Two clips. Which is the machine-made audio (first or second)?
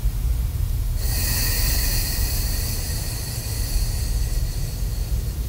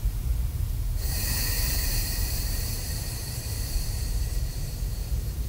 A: second